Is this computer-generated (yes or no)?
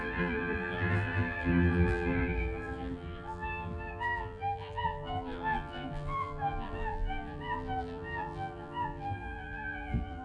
yes